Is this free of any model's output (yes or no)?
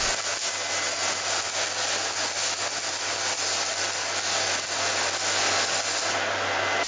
yes